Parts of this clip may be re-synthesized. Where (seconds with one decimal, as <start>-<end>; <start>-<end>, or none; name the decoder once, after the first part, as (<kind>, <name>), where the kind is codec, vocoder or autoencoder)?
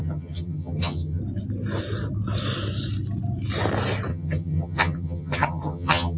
0.0-1.2 (vocoder, HiFi-GAN); 4.1-6.2